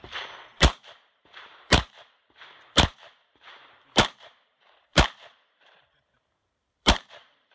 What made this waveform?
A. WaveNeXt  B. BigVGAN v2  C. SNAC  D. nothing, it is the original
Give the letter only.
B